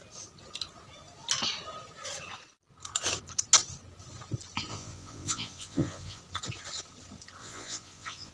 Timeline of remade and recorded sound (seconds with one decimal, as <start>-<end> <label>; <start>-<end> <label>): 0.0-4.7 recorded; 4.7-6.2 remade; 6.2-7.4 recorded; 7.4-8.3 remade